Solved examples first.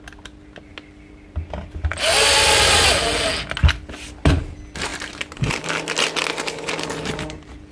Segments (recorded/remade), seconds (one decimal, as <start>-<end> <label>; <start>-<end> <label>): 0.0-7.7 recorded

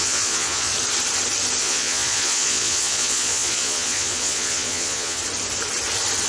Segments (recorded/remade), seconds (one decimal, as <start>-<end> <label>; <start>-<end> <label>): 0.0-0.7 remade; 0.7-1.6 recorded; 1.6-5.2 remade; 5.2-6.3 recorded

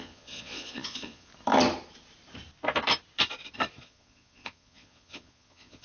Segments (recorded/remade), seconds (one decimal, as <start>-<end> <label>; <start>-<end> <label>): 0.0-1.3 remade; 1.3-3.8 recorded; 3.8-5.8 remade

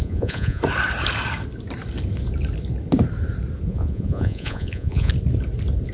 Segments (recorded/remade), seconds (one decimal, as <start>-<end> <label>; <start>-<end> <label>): 0.0-0.6 remade; 0.6-3.7 recorded; 3.7-5.1 remade; 5.1-5.9 recorded